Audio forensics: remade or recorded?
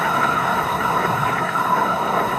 remade